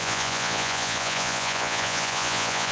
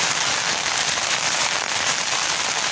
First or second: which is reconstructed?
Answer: first